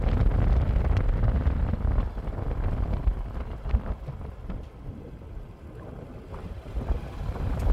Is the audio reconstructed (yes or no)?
no